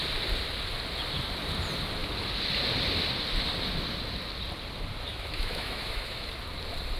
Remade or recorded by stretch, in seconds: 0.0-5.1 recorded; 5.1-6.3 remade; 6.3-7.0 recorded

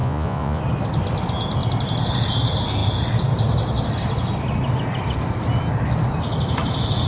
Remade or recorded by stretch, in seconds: 0.0-0.6 remade; 0.6-7.1 recorded

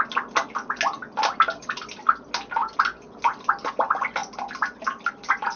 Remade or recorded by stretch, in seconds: 0.0-5.6 recorded

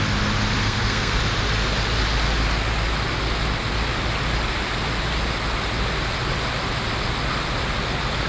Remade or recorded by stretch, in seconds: 0.0-0.6 recorded; 0.6-1.2 remade; 1.2-8.3 recorded

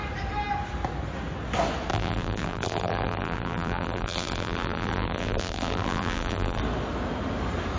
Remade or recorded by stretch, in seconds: 0.0-1.9 recorded; 1.9-6.6 remade; 6.6-7.8 recorded